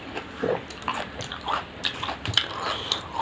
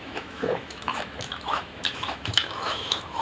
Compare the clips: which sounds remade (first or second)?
second